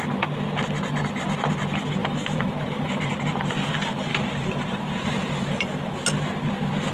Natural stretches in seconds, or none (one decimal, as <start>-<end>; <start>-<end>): 0.0-2.0; 3.1-4.1; 5.9-6.9